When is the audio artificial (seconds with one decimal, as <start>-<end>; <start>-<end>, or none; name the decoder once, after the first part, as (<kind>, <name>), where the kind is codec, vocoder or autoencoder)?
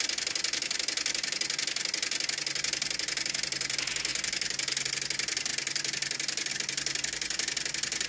none